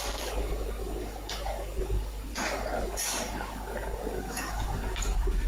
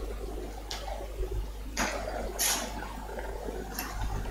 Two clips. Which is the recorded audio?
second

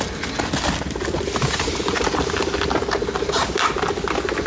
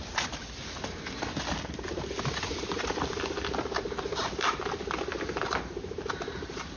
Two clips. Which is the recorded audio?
first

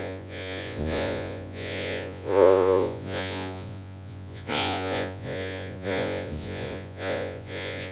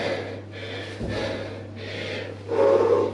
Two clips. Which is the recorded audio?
second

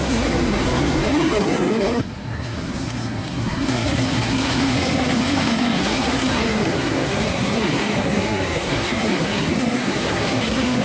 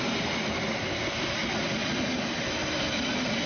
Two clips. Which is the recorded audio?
second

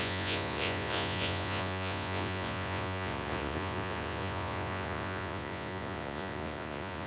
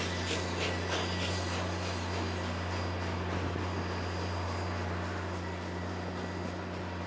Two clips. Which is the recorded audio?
second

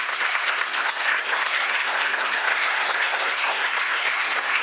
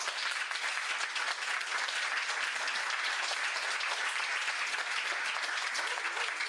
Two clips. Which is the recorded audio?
second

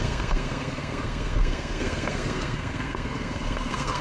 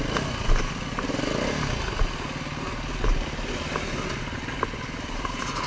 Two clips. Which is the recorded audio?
second